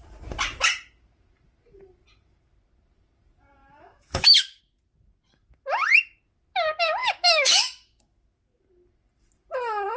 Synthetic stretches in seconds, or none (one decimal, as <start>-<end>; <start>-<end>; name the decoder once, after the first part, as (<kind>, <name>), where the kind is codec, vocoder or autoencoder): 3.6-4.6 (autoencoder, DAC-VAE); 7.0-8.6